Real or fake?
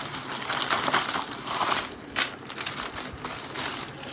real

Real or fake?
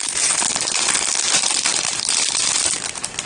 real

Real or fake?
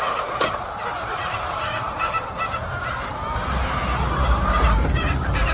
fake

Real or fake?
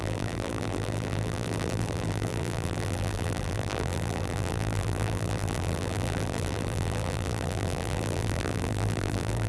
fake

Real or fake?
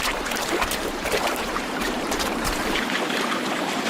fake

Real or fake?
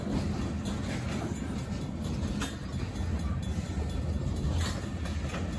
real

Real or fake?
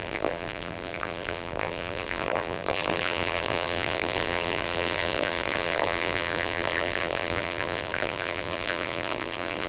fake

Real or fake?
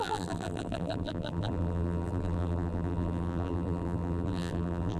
fake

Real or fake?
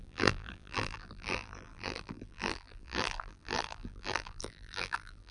fake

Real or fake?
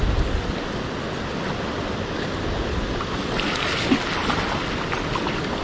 real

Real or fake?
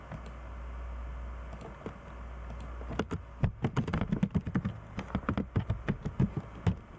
real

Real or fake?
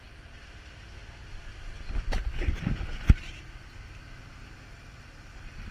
real